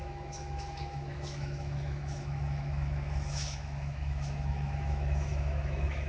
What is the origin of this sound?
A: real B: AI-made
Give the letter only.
B